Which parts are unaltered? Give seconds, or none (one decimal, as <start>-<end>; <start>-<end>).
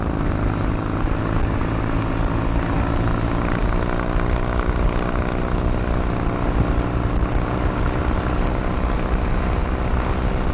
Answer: 0.0-10.5